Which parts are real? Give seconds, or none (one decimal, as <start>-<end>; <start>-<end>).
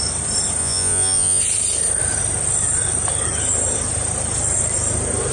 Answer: 0.0-0.6; 1.4-5.3